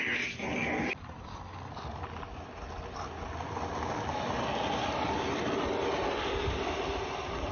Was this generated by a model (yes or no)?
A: no